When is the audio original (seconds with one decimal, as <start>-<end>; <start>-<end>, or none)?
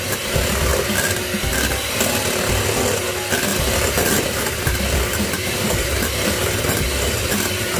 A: 0.0-3.5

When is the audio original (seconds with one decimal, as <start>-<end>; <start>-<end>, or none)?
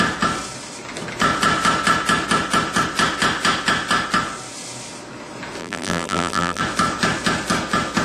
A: 0.0-5.6; 6.6-8.0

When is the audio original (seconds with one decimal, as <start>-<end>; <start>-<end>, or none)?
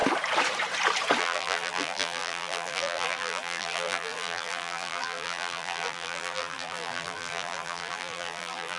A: 0.0-1.2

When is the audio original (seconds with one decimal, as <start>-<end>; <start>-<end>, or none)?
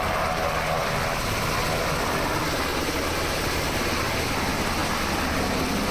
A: 0.0-0.8; 2.3-5.9